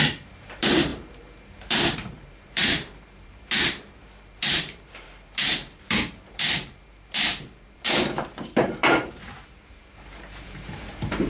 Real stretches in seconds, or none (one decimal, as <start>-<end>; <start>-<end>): none